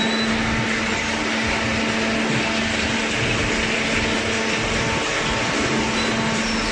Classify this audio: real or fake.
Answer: real